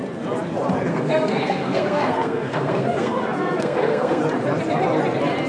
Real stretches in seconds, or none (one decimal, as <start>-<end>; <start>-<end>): 0.0-0.9; 4.2-5.5